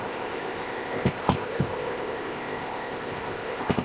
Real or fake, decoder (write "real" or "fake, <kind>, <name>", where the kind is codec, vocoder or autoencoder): fake, codec, ZipCodec